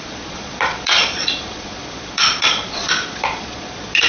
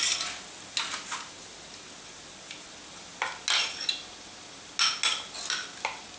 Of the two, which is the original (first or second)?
second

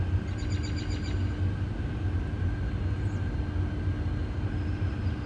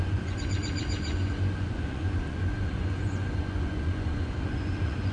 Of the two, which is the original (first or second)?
first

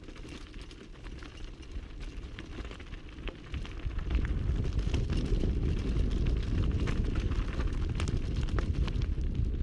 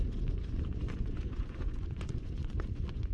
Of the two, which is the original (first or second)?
first